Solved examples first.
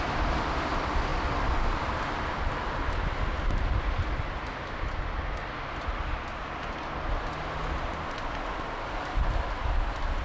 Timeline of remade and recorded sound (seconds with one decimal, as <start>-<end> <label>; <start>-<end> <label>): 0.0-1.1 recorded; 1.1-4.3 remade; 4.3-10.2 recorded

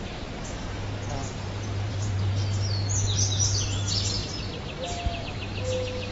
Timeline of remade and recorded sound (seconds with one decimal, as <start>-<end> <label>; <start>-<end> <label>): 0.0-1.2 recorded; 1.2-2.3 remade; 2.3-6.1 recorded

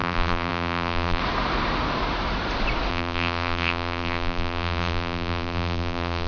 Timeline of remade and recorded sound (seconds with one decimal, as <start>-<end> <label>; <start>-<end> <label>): 0.0-1.2 remade; 1.2-2.9 recorded; 2.9-6.3 remade

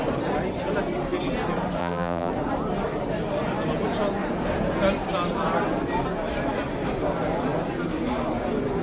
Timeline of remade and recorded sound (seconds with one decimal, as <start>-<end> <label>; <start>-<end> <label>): 0.0-1.8 recorded; 1.8-2.3 remade; 2.3-8.8 recorded